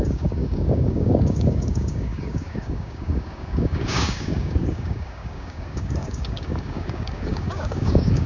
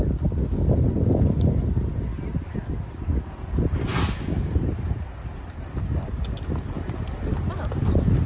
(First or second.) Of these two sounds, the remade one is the first